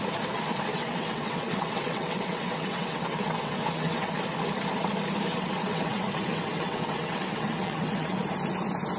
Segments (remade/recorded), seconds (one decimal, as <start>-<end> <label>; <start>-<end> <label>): 0.0-0.7 recorded; 0.7-4.1 remade; 4.1-5.3 recorded; 5.3-8.2 remade; 8.2-9.0 recorded